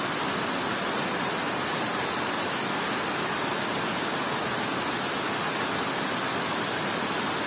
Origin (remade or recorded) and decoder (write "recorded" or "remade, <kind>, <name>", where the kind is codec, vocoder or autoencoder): recorded